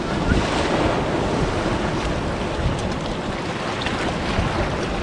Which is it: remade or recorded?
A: recorded